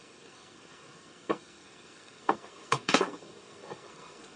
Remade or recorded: remade